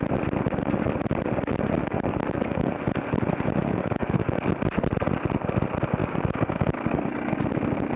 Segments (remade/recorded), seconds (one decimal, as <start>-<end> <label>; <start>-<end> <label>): 0.0-1.8 recorded; 1.8-2.7 remade; 2.7-3.6 recorded; 3.6-4.4 remade; 4.4-6.0 recorded; 6.0-7.4 remade; 7.4-8.0 recorded